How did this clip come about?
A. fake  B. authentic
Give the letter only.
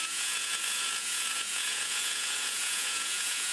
A